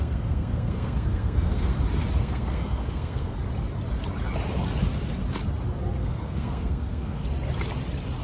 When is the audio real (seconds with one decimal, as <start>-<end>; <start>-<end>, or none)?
1.7-2.2; 3.4-6.0; 7.2-8.2